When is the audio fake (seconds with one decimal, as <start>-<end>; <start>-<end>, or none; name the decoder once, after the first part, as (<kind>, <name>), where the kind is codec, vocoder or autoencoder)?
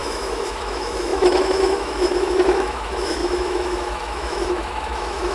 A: 0.0-5.3 (autoencoder, DAC-VAE)